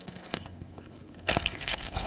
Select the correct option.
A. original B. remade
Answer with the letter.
B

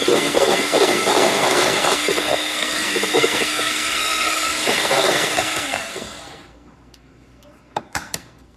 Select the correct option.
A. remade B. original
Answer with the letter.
A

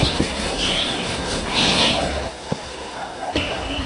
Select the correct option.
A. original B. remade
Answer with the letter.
B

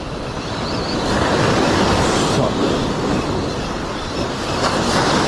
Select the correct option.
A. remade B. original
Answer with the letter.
B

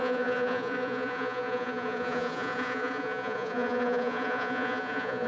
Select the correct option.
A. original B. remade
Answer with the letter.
B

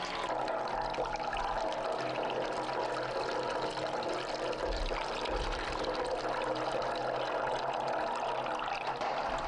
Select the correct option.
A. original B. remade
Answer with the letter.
A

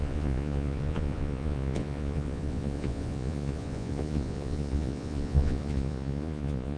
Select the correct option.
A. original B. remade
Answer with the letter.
B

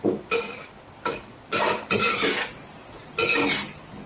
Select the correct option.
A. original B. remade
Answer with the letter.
A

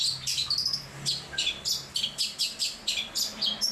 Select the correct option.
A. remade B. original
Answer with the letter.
B